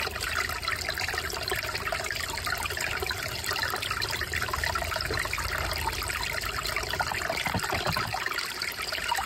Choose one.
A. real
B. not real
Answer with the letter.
B